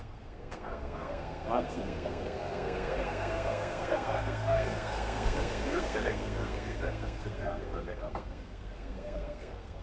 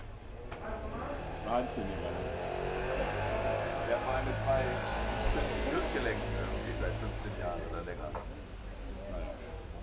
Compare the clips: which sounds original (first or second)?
second